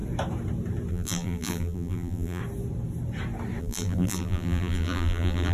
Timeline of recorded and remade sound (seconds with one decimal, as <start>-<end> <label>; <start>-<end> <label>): 0.0-0.9 recorded; 0.9-2.4 remade; 2.4-3.6 recorded; 3.6-5.5 remade